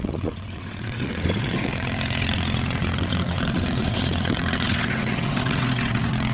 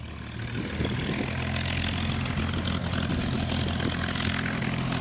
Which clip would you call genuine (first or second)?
second